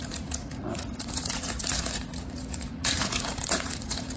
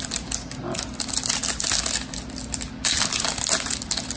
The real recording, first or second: second